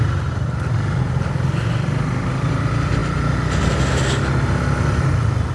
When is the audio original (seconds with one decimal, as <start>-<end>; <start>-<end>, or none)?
0.0-5.5